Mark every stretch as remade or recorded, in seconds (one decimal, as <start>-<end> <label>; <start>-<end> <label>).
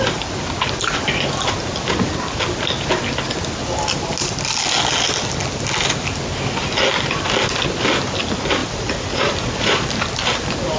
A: 0.0-8.6 recorded; 8.6-10.8 remade